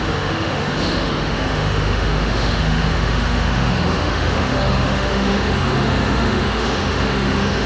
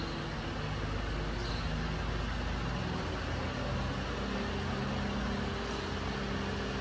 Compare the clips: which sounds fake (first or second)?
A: first